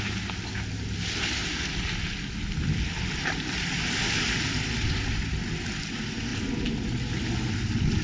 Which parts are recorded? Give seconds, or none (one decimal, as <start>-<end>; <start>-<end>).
0.0-8.0